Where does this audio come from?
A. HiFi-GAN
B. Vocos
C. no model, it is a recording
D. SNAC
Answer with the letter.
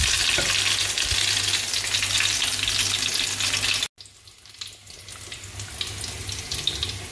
C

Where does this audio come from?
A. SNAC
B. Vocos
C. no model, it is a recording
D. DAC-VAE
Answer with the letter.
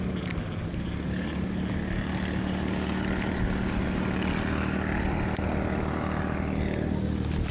C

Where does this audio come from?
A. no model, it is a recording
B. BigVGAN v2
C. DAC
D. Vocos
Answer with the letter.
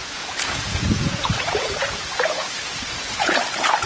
D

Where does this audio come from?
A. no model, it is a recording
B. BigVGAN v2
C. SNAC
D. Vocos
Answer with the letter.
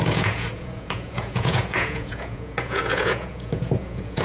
D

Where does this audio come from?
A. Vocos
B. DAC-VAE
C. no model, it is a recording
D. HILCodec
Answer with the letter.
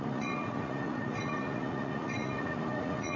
A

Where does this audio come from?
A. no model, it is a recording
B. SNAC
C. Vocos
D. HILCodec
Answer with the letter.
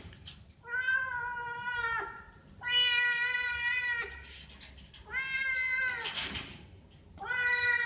A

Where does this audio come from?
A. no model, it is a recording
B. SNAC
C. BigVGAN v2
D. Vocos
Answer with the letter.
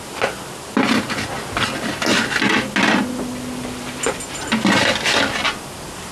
A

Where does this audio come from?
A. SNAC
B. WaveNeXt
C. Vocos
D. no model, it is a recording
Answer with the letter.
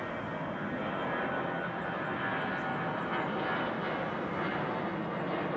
D